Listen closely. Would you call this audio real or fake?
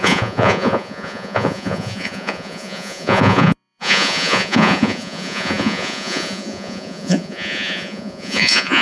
fake